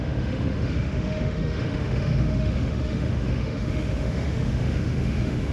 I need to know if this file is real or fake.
fake